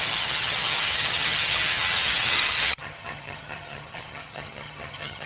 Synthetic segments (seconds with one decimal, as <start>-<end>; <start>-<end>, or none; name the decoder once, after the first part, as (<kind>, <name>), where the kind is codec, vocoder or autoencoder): 0.0-5.3 (vocoder, HiFi-GAN)

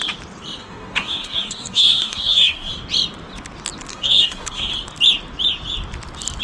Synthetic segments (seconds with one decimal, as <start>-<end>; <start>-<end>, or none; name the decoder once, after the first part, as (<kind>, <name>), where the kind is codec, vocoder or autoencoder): 0.6-2.7 (codec, SNAC); 3.9-4.7

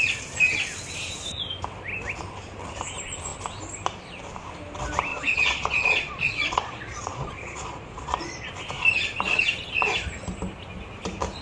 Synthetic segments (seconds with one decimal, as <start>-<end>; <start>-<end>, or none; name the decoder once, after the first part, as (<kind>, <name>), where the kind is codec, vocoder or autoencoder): 5.1-8.5 (vocoder, Vocos)

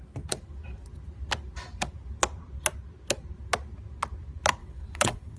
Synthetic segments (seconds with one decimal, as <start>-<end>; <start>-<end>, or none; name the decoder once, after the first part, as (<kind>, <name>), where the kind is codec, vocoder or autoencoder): 4.6-5.4 (vocoder, WaveNeXt)

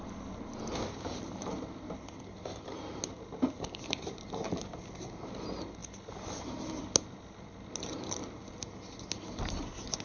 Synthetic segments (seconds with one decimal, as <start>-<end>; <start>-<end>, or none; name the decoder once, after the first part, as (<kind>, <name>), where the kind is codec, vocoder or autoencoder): none